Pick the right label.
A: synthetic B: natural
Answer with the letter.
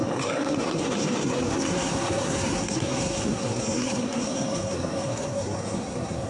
A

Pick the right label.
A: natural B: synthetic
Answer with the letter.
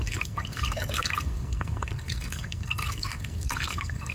B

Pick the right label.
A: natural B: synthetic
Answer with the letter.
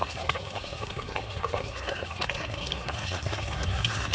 B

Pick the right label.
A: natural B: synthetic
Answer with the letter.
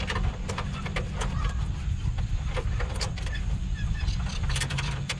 B